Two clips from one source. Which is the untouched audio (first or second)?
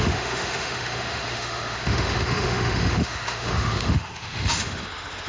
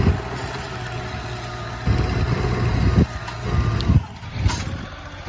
second